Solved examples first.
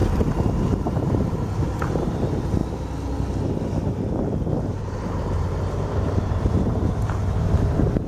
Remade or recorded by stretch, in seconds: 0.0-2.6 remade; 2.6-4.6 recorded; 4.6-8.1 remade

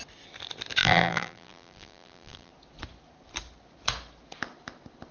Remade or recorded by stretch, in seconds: 0.0-0.8 recorded; 0.8-2.5 remade; 2.5-5.1 recorded

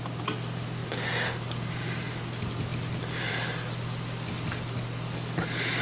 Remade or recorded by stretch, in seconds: 0.0-5.8 recorded

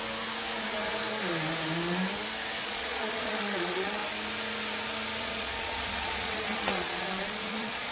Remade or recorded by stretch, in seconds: 0.0-2.6 recorded; 2.6-4.0 remade; 4.0-5.2 recorded; 5.2-7.9 remade

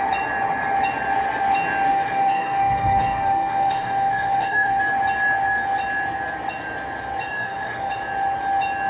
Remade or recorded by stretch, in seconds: 0.0-1.9 recorded; 1.9-4.8 remade; 4.8-7.3 recorded; 7.3-7.9 remade; 7.9-8.9 recorded